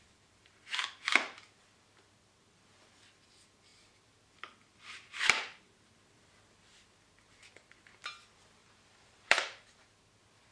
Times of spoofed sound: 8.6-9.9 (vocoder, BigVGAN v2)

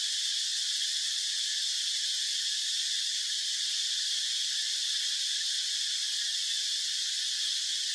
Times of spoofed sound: none

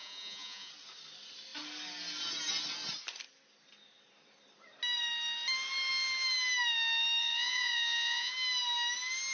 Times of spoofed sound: 0.0-0.7 (vocoder, Vocos); 7.2-8.3

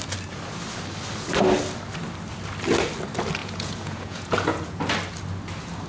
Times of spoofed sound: 3.4-4.8 (vocoder, Vocos)

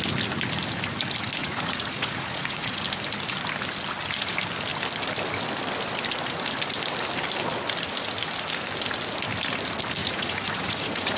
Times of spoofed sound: 1.4-2.8 (vocoder, Vocos); 10.0-11.2

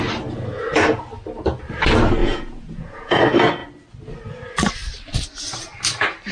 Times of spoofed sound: 2.2-3.2 (vocoder, Vocos)

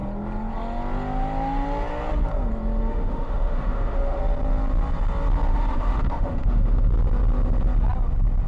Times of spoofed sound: 2.9-4.2 (autoencoder, DAC-VAE); 5.5-6.9